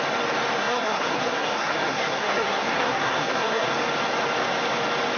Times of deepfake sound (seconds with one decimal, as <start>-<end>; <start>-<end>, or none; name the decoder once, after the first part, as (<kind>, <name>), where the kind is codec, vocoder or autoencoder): 0.6-3.7 (codec, SNAC)